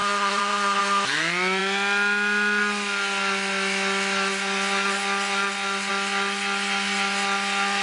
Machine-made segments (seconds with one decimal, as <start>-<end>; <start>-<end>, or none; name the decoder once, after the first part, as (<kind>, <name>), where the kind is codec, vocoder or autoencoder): 0.0-0.8 (vocoder, Vocos)